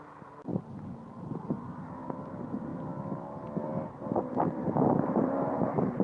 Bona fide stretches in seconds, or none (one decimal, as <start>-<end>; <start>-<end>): 2.7-3.9